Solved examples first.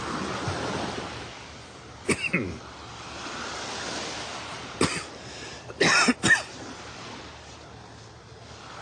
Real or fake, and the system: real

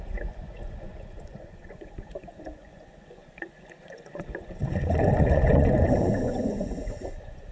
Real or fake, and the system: fake, vocoder, Vocos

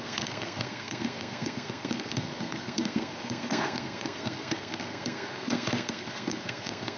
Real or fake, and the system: fake, codec, SNAC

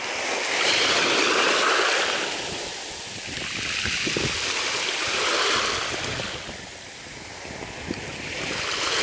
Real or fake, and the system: real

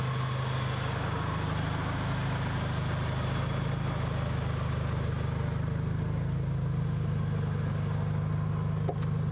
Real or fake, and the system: real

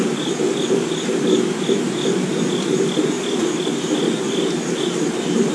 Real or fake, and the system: real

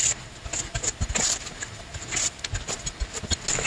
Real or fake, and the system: real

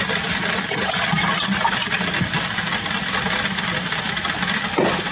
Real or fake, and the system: real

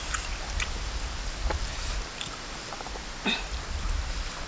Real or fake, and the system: real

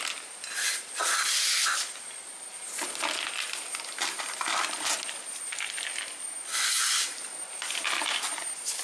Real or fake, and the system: real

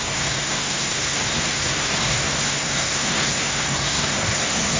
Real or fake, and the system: fake, codec, SNAC